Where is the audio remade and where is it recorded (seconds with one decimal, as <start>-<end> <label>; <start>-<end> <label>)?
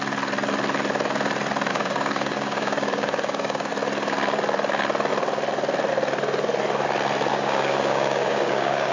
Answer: 0.0-1.7 recorded; 1.7-3.7 remade; 3.7-7.3 recorded; 7.3-8.9 remade